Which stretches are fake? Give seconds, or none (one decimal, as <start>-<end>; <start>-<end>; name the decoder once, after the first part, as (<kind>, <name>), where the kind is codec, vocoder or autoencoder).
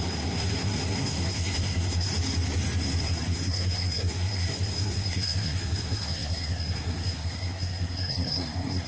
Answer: 0.0-2.1 (codec, SNAC); 3.0-8.9